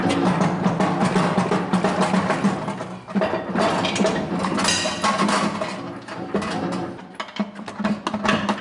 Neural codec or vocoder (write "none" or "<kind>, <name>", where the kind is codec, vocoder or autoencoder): none